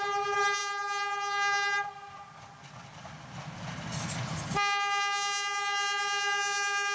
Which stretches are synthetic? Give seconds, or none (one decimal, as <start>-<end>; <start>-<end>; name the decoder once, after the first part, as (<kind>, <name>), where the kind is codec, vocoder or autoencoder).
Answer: none